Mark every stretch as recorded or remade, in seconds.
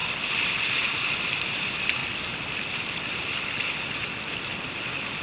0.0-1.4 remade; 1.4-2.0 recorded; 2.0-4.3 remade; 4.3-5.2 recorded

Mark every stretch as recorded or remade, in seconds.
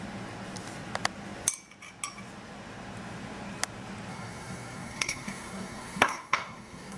0.0-4.1 recorded; 4.1-7.0 remade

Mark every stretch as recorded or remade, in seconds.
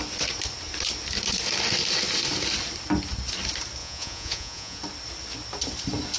0.0-3.8 recorded; 3.8-4.8 remade; 4.8-6.2 recorded